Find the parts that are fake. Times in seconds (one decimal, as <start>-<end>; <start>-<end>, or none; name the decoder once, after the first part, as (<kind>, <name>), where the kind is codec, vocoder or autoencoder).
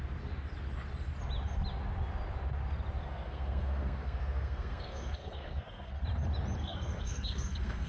3.0-5.9 (codec, SNAC); 6.6-7.9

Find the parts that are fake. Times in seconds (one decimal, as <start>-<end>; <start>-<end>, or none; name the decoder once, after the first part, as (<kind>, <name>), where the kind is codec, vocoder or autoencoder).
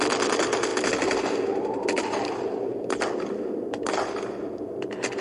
none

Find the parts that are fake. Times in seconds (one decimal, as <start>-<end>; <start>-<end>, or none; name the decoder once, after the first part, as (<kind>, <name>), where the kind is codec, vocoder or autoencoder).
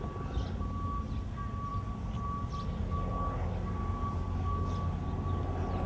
4.0-4.7 (codec, DAC)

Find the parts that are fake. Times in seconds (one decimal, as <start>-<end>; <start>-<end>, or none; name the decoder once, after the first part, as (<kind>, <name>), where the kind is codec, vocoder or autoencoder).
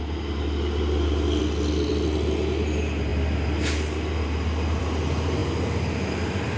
none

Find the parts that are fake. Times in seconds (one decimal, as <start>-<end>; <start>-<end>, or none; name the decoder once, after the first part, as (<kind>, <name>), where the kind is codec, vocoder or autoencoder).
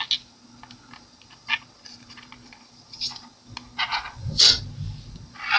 3.9-4.6 (vocoder, Vocos)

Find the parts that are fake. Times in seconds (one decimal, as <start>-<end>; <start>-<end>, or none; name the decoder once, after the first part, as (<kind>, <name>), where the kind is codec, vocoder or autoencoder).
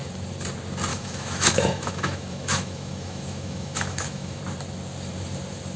0.9-4.4 (autoencoder, DAC-VAE)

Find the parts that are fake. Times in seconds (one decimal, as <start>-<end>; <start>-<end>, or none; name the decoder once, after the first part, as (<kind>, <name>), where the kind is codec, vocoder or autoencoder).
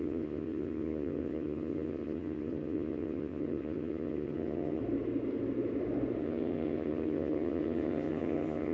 0.0-4.8 (vocoder, HiFi-GAN); 6.2-8.7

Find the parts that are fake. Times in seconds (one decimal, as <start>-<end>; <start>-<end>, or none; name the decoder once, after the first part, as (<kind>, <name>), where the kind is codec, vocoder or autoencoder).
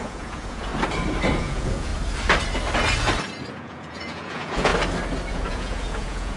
0.0-0.7 (vocoder, Vocos); 1.4-1.9; 3.5-4.7; 5.3-6.4